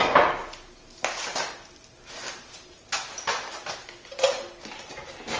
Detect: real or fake real